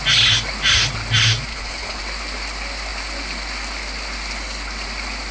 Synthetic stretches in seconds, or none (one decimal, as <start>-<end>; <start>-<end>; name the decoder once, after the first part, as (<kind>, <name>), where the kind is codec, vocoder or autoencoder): 1.5-2.0 (codec, HILCodec)